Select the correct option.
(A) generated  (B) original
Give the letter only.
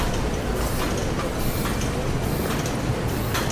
B